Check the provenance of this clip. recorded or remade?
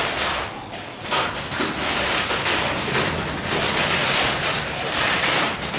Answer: recorded